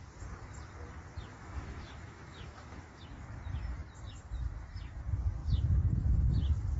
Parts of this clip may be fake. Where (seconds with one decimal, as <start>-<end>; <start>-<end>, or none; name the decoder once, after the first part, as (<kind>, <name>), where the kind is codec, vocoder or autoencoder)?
1.3-3.0 (autoencoder, DAC-VAE)